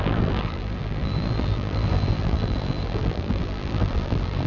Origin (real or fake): fake